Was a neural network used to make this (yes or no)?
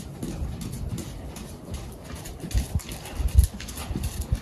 no